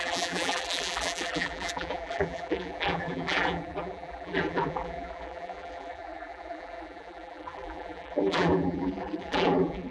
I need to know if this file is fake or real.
fake